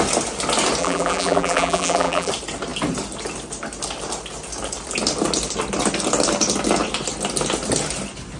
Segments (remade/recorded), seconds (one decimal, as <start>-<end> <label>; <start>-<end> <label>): 0.0-0.8 recorded; 0.8-2.3 remade; 2.3-8.4 recorded

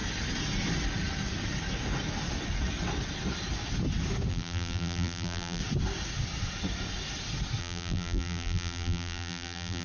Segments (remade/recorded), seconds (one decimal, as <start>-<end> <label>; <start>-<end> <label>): 0.0-4.3 recorded; 4.3-5.6 remade; 5.6-7.6 recorded; 7.6-9.8 remade

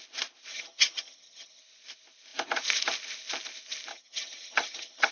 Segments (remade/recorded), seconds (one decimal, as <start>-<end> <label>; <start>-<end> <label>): 0.0-0.5 recorded; 0.5-1.6 remade; 1.6-3.9 recorded; 3.9-5.1 remade